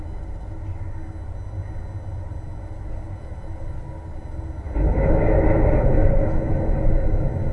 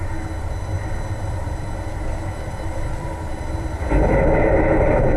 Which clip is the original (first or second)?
first